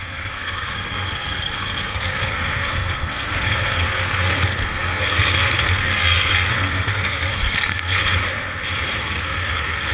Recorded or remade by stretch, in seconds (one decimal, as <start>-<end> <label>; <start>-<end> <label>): 0.0-8.0 remade; 8.0-9.0 recorded; 9.0-9.9 remade